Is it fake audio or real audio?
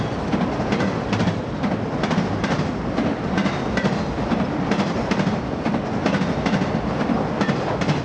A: real